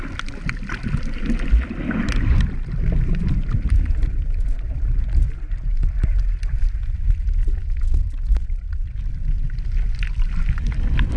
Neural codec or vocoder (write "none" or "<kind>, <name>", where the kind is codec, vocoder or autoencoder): none